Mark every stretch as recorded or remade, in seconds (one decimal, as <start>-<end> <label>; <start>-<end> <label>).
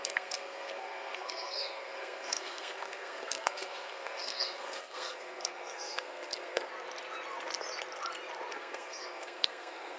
0.0-6.7 remade; 6.7-8.5 recorded; 8.5-10.0 remade